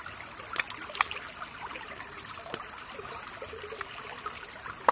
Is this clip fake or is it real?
real